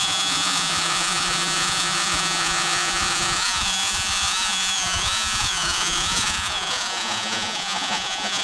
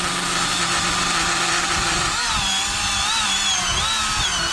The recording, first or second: second